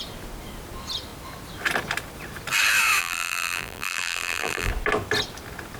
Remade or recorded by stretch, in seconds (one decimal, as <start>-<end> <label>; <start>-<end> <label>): 0.0-3.0 recorded; 3.0-4.7 remade; 4.7-5.8 recorded